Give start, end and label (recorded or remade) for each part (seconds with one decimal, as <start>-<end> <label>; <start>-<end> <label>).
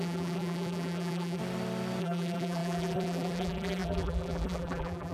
0.0-1.4 remade; 1.4-2.0 recorded; 2.0-5.1 remade